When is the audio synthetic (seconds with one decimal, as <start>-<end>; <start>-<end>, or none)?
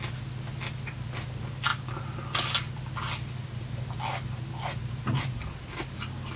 none